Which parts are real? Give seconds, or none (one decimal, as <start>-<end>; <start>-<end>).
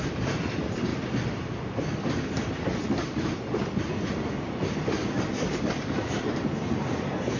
0.9-5.3